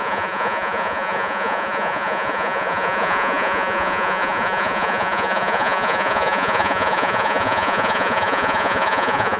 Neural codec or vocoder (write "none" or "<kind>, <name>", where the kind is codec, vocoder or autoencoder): vocoder, Vocos